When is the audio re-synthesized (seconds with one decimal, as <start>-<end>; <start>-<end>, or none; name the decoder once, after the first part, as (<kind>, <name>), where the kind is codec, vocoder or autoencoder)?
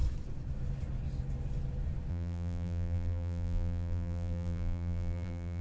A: 2.1-5.6 (vocoder, BigVGAN v2)